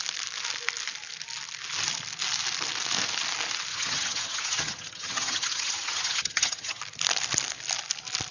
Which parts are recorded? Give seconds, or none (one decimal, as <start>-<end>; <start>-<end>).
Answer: 0.0-3.7; 6.8-8.3